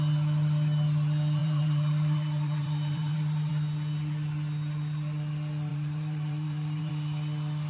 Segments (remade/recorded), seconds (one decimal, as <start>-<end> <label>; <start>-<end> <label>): 0.0-1.4 recorded; 1.4-3.5 remade; 3.5-5.7 recorded; 5.7-6.9 remade; 6.9-7.7 recorded